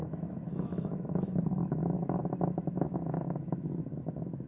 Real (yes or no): no